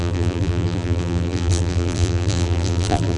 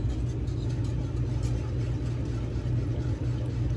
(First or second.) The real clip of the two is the second